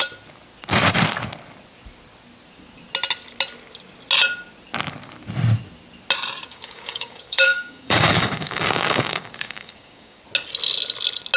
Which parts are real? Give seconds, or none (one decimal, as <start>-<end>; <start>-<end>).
0.0-6.4; 10.2-11.4